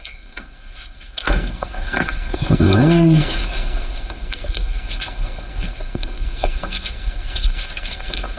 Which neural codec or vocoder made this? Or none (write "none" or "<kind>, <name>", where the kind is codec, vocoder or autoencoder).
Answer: codec, SNAC